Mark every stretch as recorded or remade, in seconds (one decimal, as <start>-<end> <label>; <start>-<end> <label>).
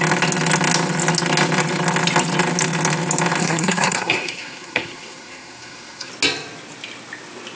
0.0-3.4 recorded; 3.4-6.1 remade; 6.1-7.5 recorded